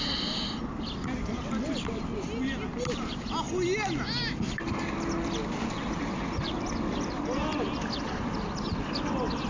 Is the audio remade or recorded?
recorded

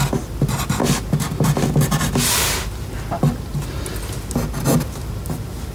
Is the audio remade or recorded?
recorded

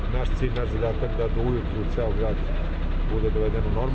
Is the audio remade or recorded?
recorded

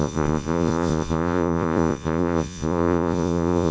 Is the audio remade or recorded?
remade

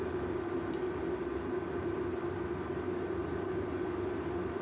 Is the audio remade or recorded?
recorded